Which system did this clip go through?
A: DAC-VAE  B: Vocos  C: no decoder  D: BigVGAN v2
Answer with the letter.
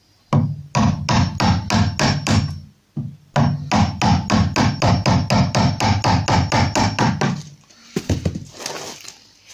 C